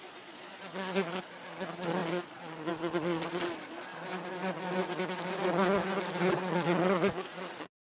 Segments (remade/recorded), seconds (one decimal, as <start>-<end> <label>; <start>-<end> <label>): 0.0-3.9 remade; 3.9-6.3 recorded; 6.3-8.0 remade